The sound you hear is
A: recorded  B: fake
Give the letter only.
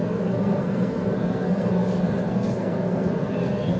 B